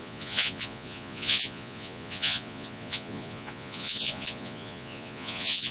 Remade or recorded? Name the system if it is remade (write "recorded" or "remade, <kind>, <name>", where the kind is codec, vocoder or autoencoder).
remade, vocoder, Vocos